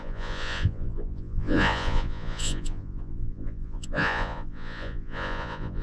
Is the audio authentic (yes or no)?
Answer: no